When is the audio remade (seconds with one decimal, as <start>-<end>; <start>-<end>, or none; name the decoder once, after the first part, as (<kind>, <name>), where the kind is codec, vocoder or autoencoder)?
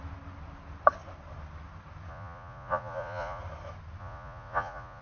2.1-3.4 (vocoder, Vocos); 4.0-5.0